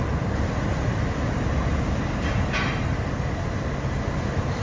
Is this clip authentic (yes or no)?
yes